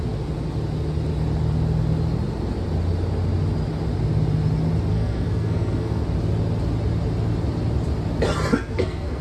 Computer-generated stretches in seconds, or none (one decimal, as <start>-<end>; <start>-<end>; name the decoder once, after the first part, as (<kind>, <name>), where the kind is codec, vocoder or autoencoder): 4.9-6.0 (codec, SNAC); 8.5-9.2